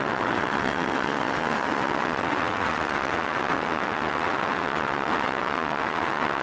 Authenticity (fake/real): fake